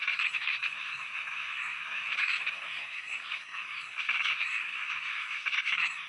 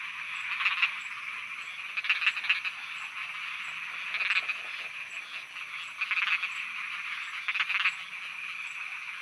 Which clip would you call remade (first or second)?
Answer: first